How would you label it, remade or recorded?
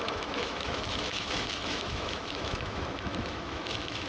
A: remade